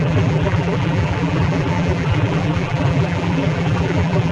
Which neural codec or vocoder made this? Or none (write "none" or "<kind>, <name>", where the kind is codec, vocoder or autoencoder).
vocoder, BigVGAN v2